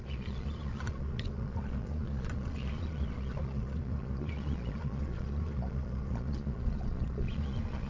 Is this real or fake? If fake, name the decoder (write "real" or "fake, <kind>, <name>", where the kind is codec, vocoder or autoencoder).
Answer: fake, vocoder, Vocos